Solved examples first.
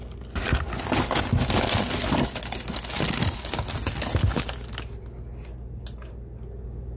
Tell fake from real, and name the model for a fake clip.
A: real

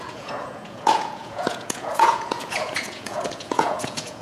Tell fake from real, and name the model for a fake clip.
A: fake, vocoder, Vocos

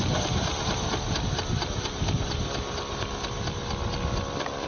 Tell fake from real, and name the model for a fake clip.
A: real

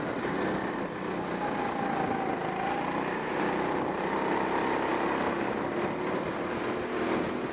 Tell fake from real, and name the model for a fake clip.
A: real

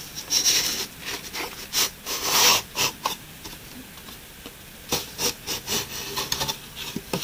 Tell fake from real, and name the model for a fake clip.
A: real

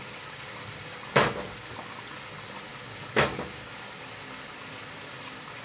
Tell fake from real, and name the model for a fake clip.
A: real